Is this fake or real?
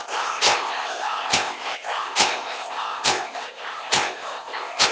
fake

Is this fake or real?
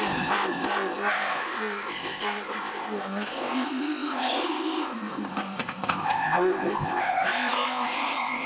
fake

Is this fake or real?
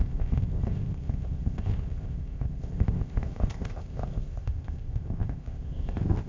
fake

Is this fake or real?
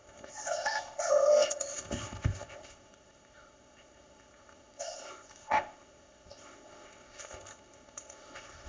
fake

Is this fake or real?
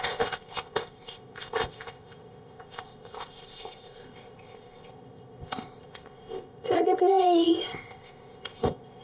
fake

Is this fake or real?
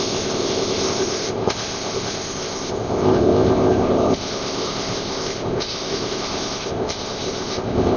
fake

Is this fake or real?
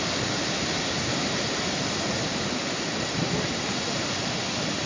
real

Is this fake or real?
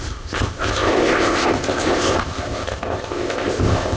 fake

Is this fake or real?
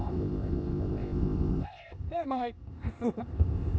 fake